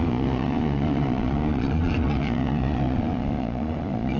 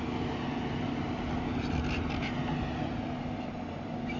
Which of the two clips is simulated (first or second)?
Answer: first